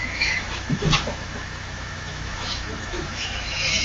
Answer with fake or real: fake